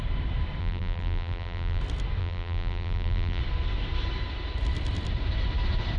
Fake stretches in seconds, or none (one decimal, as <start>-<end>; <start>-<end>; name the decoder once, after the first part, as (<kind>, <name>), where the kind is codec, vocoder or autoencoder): 0.6-1.8 (vocoder, BigVGAN v2); 2.2-3.4